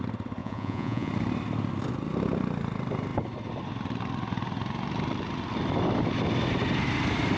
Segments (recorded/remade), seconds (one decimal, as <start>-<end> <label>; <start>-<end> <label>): 0.0-0.4 recorded; 0.4-1.1 remade; 1.1-7.4 recorded

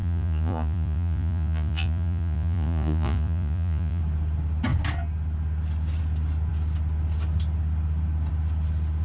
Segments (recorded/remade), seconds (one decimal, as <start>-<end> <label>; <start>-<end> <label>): 0.0-4.0 remade; 4.0-9.0 recorded

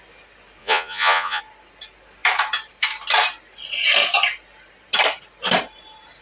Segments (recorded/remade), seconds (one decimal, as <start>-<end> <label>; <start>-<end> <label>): 0.0-0.6 recorded; 0.6-1.4 remade; 1.4-6.2 recorded

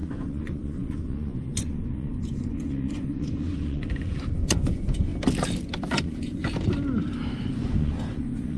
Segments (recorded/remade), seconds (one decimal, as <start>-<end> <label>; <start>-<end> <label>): 0.0-5.1 remade; 5.1-6.0 recorded; 6.0-6.4 remade; 6.4-7.5 recorded; 7.5-8.6 remade

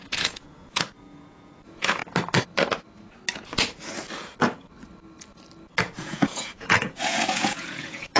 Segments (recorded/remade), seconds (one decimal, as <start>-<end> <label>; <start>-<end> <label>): 0.0-2.0 remade; 2.0-5.8 recorded; 5.8-8.2 remade

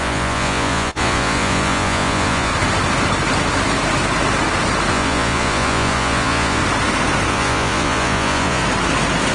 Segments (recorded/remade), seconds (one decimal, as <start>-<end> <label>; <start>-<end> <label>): 0.0-2.5 remade; 2.5-4.9 recorded; 4.9-6.6 remade; 6.6-7.3 recorded; 7.3-8.6 remade; 8.6-9.3 recorded